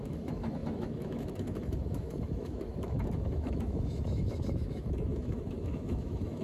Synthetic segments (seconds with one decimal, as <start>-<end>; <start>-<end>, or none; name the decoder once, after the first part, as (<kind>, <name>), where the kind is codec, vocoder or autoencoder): 0.0-6.4 (autoencoder, DAC-VAE)